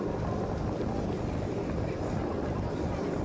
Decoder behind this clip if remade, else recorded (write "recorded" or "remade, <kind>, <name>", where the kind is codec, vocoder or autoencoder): recorded